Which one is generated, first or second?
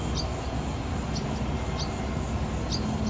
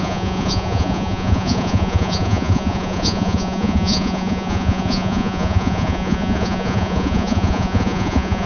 second